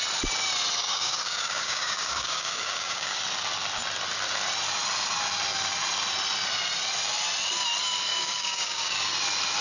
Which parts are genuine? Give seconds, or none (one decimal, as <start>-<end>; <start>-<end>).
0.0-0.8; 3.2-8.1; 8.9-9.6